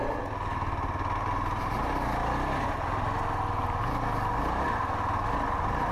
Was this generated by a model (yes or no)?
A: no